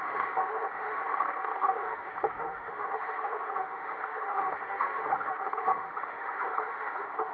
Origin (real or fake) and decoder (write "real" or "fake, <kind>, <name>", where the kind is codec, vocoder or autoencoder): fake, autoencoder, DAC-VAE